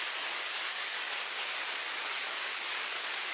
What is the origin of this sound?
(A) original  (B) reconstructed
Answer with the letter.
B